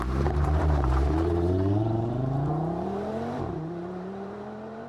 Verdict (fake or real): fake